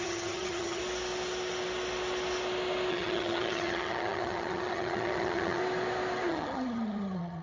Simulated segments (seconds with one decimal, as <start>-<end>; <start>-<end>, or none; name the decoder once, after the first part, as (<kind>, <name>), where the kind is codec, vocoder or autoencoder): 0.0-0.8 (vocoder, HiFi-GAN); 2.9-5.6; 6.3-7.4